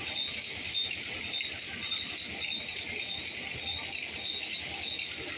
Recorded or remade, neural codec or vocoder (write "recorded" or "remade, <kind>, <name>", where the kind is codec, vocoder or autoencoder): recorded